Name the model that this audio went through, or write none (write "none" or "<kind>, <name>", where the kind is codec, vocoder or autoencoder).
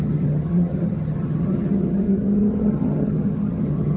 vocoder, HiFi-GAN